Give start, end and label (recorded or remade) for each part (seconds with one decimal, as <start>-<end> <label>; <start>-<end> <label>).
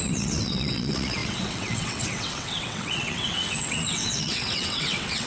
0.0-5.3 remade